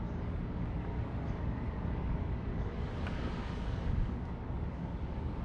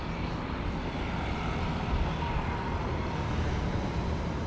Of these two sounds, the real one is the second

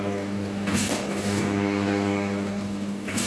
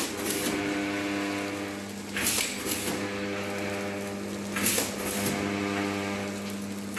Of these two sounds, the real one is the second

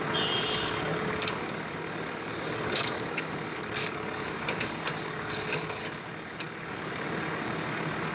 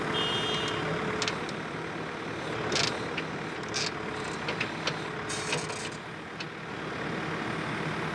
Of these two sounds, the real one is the second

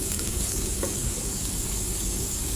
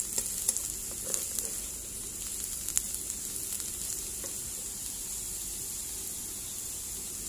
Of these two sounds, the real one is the second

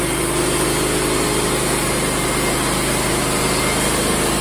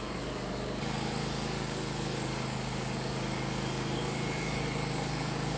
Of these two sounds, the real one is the first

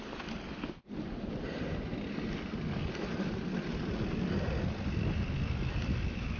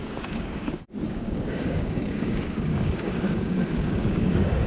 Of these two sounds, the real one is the first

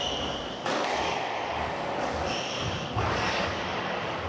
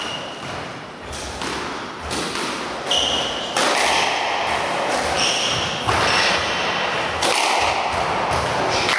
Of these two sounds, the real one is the second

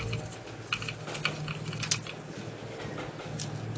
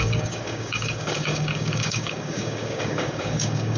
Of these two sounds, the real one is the first